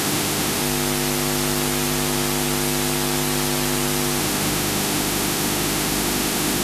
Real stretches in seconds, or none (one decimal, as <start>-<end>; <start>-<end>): 0.6-4.2